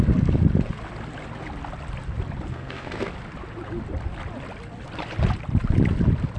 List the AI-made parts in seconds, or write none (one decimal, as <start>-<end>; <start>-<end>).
2.5-3.1